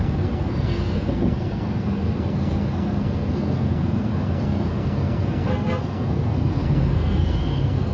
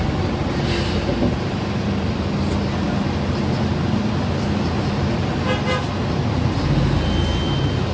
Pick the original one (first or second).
second